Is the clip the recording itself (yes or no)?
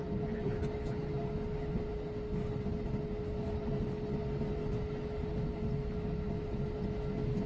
yes